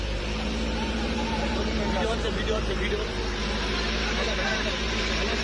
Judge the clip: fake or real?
fake